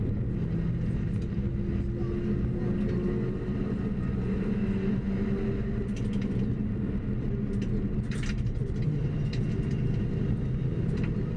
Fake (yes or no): no